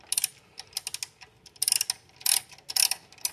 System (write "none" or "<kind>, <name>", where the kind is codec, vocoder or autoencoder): none